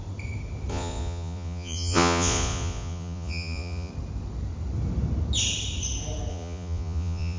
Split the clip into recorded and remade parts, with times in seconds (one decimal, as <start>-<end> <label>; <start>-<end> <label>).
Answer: 0.0-0.7 recorded; 0.7-3.9 remade; 3.9-6.3 recorded; 6.3-7.4 remade